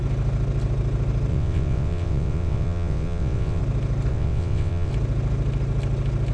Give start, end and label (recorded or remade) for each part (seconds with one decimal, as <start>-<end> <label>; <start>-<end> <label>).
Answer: 0.0-1.3 recorded; 1.3-3.6 remade; 3.6-4.1 recorded; 4.1-4.9 remade; 4.9-6.3 recorded